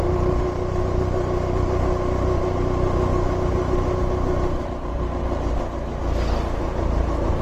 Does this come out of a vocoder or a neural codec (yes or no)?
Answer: no